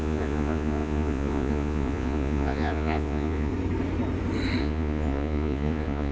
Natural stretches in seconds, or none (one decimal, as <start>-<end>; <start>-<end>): 3.5-4.6